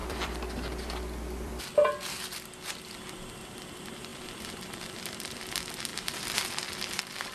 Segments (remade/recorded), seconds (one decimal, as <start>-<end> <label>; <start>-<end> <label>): 0.0-1.6 remade; 1.6-4.1 recorded; 4.1-5.4 remade; 5.4-5.9 recorded; 5.9-6.5 remade; 6.5-7.3 recorded